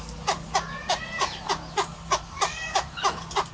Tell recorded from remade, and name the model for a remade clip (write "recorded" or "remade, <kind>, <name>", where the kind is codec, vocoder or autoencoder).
recorded